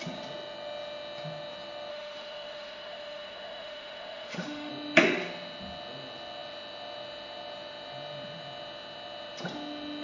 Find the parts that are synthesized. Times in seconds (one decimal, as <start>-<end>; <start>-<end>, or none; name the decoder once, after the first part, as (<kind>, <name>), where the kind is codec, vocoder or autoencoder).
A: 1.9-4.7 (autoencoder, DAC-VAE)